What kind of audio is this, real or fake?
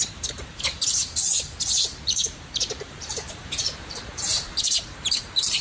fake